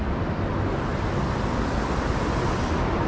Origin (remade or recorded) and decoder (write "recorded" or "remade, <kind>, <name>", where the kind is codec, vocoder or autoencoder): recorded